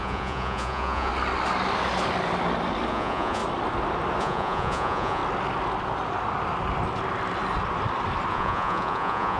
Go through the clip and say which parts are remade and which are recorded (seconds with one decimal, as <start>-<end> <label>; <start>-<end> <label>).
0.0-1.1 remade; 1.1-2.9 recorded; 2.9-3.4 remade; 3.4-4.2 recorded; 4.2-5.2 remade; 5.2-8.3 recorded; 8.3-9.4 remade